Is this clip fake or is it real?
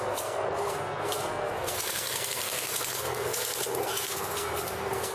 fake